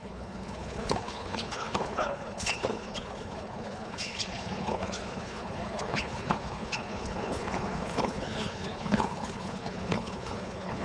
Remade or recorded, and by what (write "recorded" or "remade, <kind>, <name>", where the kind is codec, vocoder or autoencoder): remade, codec, HILCodec